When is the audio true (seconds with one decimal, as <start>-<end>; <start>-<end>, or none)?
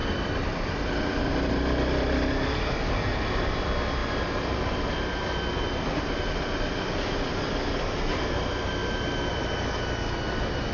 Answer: 0.0-10.7